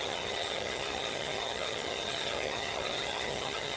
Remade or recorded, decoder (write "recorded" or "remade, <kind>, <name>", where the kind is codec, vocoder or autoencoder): remade, vocoder, HiFi-GAN